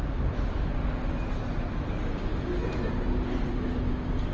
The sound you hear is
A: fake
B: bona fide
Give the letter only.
B